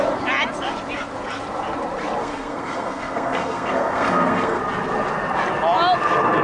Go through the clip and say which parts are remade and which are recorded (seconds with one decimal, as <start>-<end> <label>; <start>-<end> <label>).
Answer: 0.0-2.2 recorded; 2.2-4.6 remade; 4.6-6.4 recorded